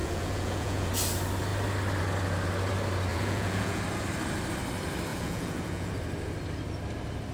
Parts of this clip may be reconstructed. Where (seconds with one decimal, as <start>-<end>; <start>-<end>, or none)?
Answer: 0.0-0.9; 3.1-3.8; 5.1-5.9